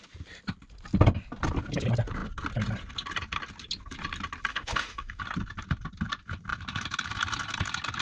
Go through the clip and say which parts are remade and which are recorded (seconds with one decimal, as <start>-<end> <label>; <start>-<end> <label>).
0.0-4.5 recorded; 4.5-5.2 remade; 5.2-8.0 recorded